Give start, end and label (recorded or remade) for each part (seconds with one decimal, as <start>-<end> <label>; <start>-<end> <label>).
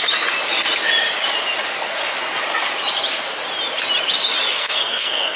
0.0-4.5 recorded; 4.5-5.4 remade